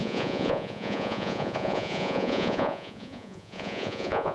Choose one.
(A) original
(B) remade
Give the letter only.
B